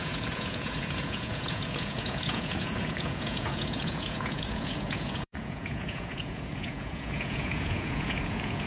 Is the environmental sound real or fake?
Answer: fake